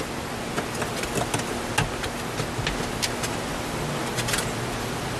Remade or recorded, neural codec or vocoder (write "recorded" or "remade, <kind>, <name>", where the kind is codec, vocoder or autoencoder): recorded